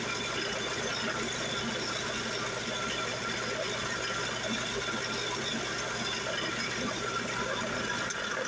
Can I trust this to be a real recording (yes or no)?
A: yes